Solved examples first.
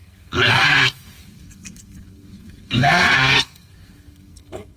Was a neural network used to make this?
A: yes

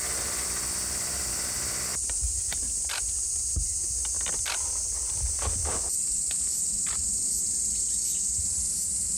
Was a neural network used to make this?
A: no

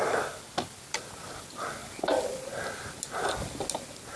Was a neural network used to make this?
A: no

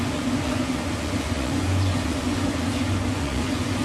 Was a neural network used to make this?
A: yes